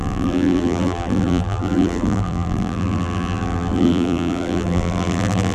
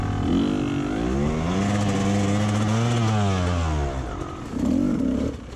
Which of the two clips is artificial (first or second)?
first